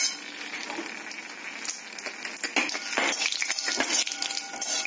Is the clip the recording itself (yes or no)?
yes